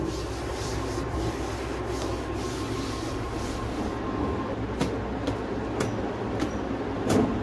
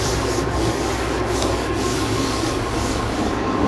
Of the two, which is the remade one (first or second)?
second